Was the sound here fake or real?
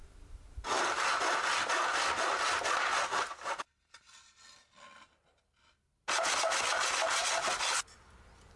real